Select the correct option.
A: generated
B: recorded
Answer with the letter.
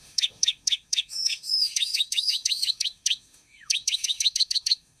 A